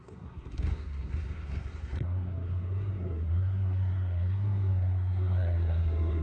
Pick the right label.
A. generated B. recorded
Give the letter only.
A